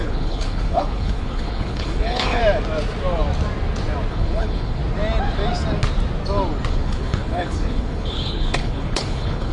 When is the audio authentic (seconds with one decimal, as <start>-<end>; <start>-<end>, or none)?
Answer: 2.4-4.1; 4.8-6.7